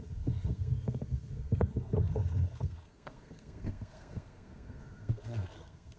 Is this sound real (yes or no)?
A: no